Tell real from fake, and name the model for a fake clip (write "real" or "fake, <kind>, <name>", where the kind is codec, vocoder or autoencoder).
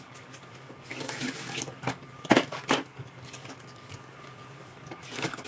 fake, codec, DAC